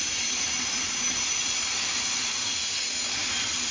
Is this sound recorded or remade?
recorded